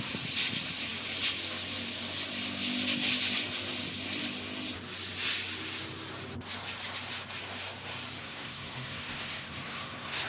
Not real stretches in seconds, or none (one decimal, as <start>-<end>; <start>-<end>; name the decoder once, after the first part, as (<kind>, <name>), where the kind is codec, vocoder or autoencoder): 8.2-10.3 (codec, SNAC)